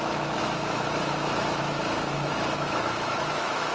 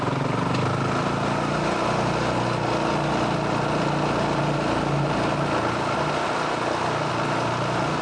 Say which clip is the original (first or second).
second